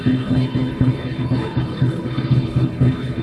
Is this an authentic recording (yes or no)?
no